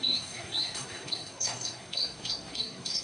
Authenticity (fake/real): fake